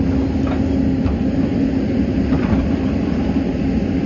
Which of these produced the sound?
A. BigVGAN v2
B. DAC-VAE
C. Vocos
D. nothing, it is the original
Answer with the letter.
D